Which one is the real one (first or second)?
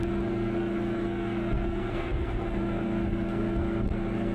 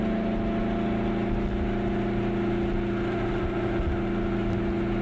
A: second